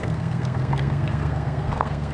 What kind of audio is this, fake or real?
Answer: fake